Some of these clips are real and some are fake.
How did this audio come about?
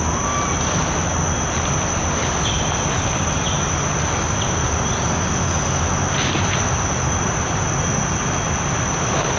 real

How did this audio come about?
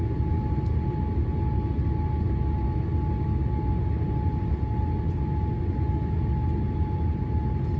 real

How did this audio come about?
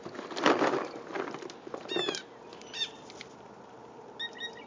real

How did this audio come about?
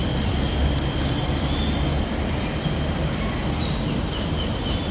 real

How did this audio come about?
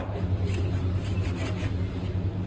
real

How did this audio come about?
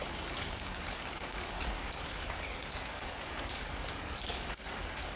fake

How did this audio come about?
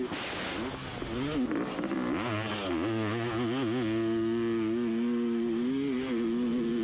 real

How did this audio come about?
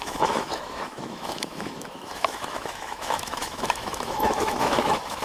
fake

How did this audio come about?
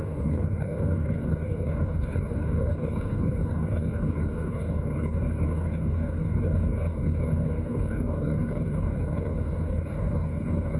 fake